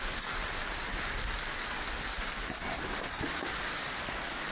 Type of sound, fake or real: real